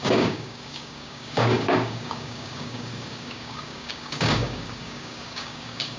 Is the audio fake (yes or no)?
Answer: yes